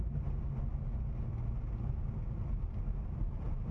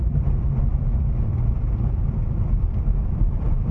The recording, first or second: first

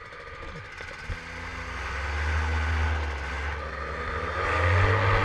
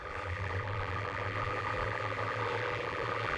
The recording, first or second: first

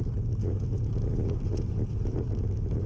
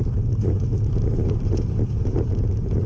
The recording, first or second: first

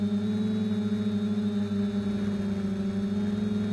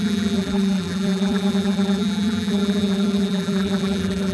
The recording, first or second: first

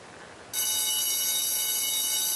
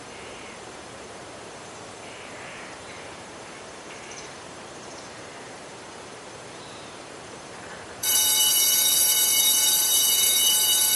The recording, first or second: first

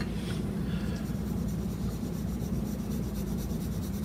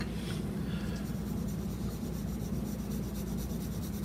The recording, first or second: second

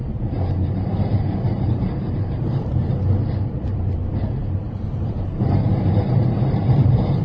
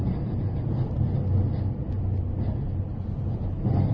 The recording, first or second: second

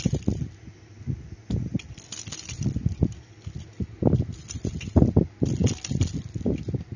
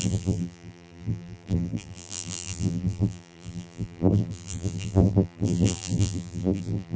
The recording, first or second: first